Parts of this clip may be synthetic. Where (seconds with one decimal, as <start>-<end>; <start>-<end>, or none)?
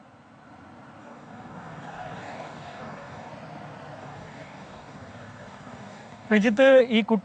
1.0-3.3; 4.0-6.8